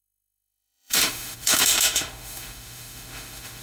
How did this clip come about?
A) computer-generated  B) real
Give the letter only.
A